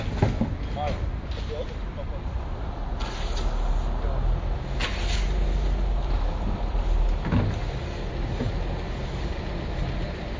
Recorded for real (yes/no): yes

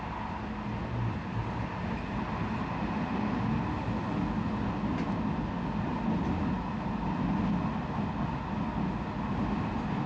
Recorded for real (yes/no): yes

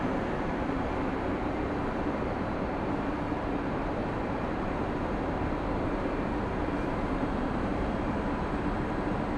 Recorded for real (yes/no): no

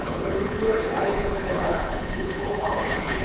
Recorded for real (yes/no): no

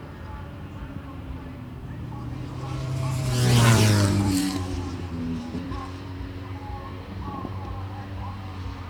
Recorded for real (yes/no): no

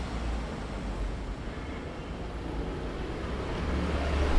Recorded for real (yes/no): yes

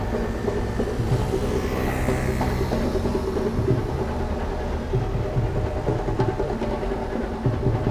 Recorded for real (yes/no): yes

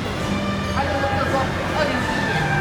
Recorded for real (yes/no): yes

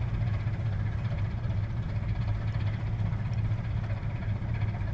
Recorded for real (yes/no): yes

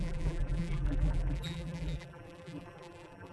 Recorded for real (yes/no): no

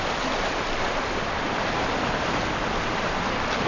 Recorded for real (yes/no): yes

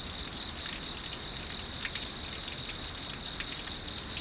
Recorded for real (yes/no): yes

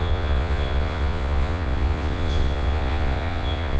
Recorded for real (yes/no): no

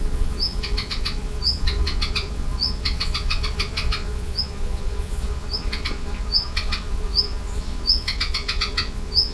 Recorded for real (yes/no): no